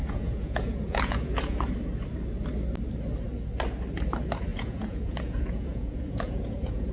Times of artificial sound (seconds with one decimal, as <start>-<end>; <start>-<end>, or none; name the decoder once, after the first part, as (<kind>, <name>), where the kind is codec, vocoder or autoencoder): 0.0-1.7 (vocoder, Vocos); 4.5-6.9